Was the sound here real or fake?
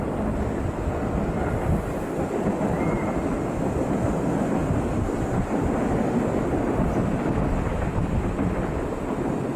real